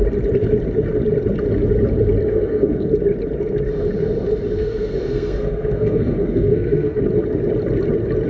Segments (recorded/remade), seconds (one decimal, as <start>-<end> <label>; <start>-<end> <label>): 0.0-2.3 recorded; 2.3-2.9 remade; 2.9-4.6 recorded; 4.6-7.0 remade; 7.0-8.3 recorded